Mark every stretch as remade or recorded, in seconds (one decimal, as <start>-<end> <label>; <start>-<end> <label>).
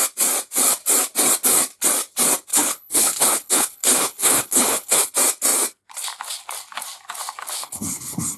0.0-2.5 recorded; 2.5-5.1 remade; 5.1-7.6 recorded; 7.6-8.4 remade